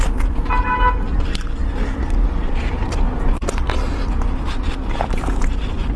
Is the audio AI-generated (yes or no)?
no